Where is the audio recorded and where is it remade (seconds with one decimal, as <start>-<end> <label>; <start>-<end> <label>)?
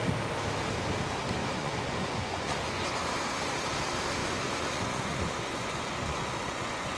0.0-1.4 recorded; 1.4-3.1 remade; 3.1-4.2 recorded; 4.2-7.0 remade